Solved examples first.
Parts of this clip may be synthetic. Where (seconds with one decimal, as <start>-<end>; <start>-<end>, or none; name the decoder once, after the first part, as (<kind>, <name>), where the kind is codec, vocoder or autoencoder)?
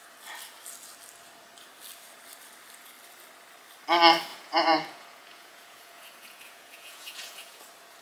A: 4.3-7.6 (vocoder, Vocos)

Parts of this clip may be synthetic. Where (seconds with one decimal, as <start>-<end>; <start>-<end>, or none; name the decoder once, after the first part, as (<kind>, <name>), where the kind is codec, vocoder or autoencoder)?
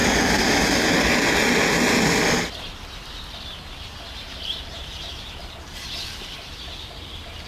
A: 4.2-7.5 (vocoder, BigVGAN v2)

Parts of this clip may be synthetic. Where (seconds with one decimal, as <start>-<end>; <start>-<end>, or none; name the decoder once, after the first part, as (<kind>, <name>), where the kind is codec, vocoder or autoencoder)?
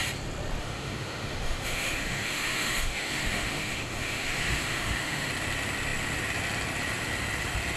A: 0.6-5.3 (autoencoder, DAC-VAE)